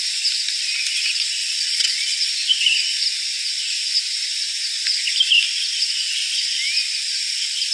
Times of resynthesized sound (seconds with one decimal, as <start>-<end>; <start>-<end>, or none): 1.4-2.3